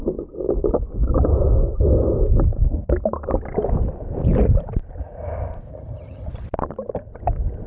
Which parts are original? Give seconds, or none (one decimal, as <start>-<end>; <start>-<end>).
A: 0.0-5.7; 6.3-7.7